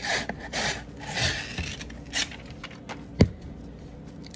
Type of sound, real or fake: real